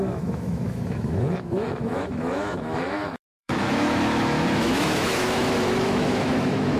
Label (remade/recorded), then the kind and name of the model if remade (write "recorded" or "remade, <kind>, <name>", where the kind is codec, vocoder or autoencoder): remade, autoencoder, DAC-VAE